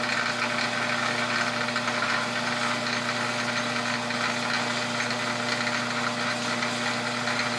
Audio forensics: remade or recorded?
recorded